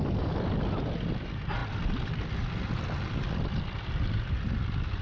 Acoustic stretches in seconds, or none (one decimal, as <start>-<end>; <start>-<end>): 0.0-1.6; 4.1-5.0